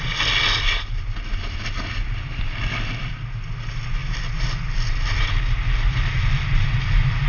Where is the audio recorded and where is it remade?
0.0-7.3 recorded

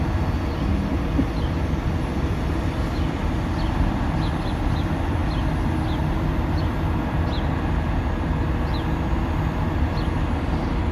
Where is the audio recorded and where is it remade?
0.0-10.9 recorded

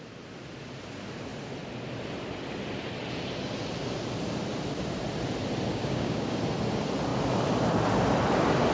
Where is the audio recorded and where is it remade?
0.0-5.7 recorded; 5.7-6.4 remade; 6.4-8.7 recorded

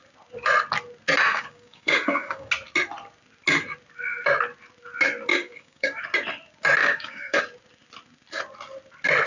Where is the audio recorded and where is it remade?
0.0-1.3 recorded; 1.3-2.5 remade; 2.5-5.3 recorded; 5.3-6.0 remade; 6.0-6.8 recorded; 6.8-7.4 remade; 7.4-9.3 recorded

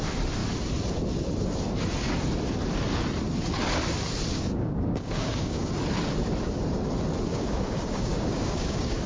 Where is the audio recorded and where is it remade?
0.0-4.3 recorded; 4.3-5.7 remade; 5.7-7.3 recorded; 7.3-9.1 remade

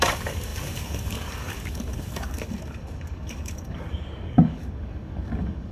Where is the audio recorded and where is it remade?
0.0-5.7 remade

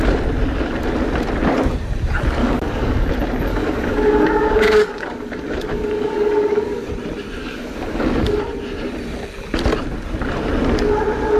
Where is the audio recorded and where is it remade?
0.0-2.4 recorded; 2.4-3.1 remade; 3.1-3.5 recorded; 3.5-6.9 remade; 6.9-7.4 recorded; 7.4-8.4 remade; 8.4-11.4 recorded